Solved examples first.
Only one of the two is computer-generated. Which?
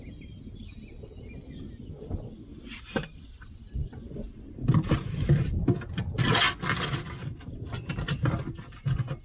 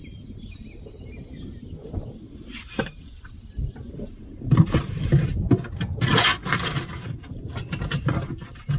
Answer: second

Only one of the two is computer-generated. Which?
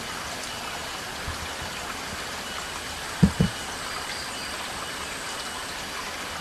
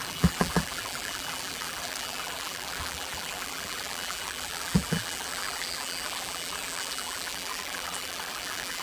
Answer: second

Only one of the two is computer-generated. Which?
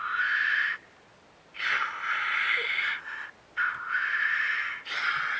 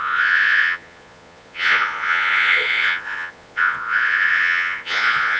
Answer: second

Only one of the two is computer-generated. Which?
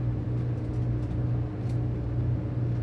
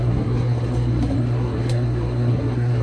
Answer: second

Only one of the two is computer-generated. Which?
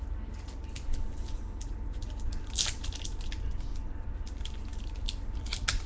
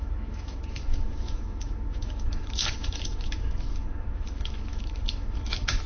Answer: second